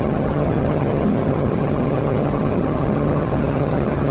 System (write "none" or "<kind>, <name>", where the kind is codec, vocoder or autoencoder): vocoder, HiFi-GAN